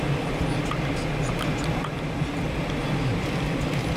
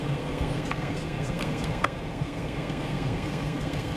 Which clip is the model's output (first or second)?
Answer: second